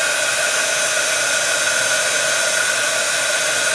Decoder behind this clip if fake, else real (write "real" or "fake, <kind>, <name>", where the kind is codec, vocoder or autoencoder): real